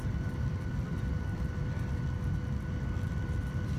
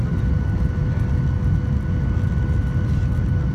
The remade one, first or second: first